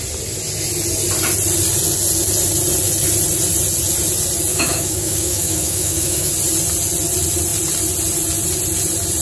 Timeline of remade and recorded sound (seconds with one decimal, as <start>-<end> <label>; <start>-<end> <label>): 0.0-4.5 recorded; 4.5-6.3 remade; 6.3-9.2 recorded

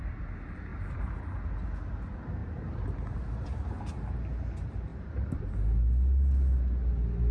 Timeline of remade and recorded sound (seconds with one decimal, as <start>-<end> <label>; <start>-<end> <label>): 0.0-0.7 recorded; 0.7-1.2 remade; 1.2-2.4 recorded; 2.4-3.7 remade; 3.7-4.9 recorded; 4.9-5.4 remade; 5.4-7.3 recorded